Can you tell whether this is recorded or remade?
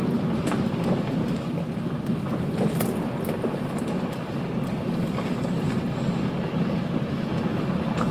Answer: recorded